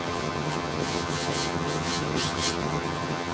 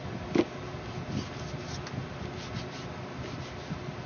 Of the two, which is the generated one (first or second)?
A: first